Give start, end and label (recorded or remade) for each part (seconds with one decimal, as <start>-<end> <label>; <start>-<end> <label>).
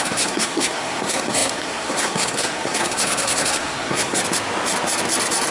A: 0.0-4.2 remade; 4.2-5.5 recorded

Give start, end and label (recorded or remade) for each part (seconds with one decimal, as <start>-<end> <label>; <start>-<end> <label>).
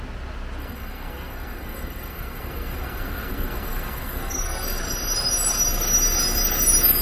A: 0.0-0.6 recorded; 0.6-4.8 remade; 4.8-7.0 recorded